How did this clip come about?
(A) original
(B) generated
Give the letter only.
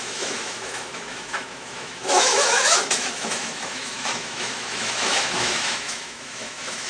B